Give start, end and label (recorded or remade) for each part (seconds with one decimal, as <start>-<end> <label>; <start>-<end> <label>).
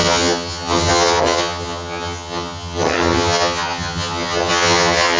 0.0-5.2 remade